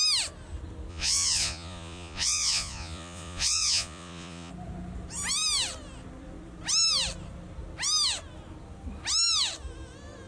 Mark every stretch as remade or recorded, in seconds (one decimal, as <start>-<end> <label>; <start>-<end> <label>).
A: 0.0-0.9 recorded; 0.9-4.5 remade; 4.5-10.3 recorded